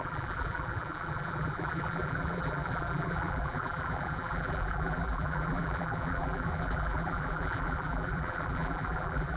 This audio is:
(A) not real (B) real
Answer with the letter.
A